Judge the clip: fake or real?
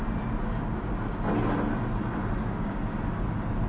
real